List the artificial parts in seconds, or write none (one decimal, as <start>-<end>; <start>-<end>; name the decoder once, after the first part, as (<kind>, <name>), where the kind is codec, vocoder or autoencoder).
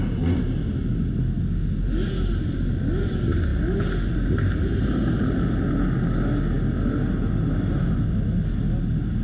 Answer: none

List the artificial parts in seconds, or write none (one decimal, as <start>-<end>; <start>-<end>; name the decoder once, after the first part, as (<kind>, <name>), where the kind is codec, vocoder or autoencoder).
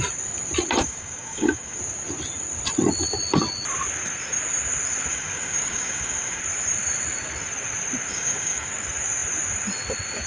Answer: 0.8-1.8 (codec, DAC); 5.1-6.4; 8.1-8.7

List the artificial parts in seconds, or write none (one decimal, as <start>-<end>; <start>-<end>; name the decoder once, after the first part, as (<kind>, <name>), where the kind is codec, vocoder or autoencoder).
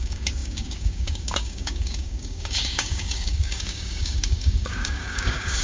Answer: 0.0-5.6 (codec, DAC)